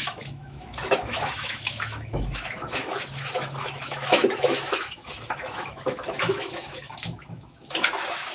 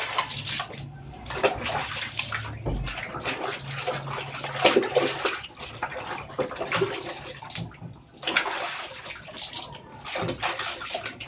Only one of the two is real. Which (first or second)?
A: second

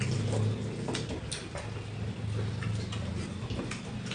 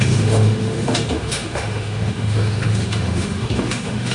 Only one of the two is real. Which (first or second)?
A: first